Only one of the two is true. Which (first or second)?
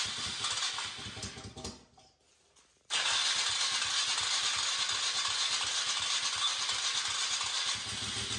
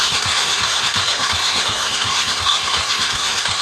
first